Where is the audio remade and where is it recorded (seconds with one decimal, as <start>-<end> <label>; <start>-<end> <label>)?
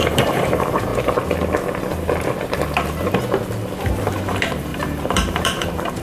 0.0-0.9 remade; 0.9-4.0 recorded; 4.0-6.0 remade